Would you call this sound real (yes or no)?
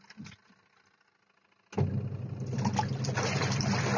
yes